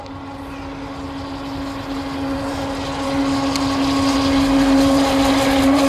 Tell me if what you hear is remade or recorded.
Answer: recorded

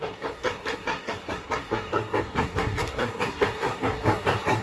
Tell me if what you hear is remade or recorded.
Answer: remade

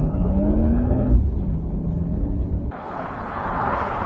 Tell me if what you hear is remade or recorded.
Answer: remade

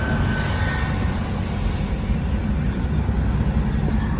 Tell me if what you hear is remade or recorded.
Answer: recorded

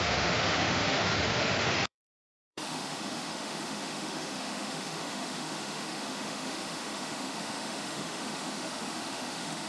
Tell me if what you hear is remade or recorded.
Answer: remade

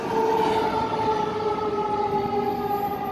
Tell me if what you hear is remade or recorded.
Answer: recorded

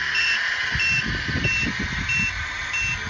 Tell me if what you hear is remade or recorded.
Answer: recorded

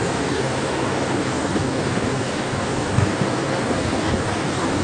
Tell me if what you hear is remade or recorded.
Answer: remade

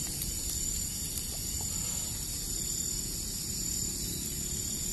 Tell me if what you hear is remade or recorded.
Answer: recorded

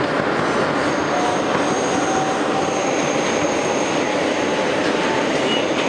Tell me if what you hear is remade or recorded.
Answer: recorded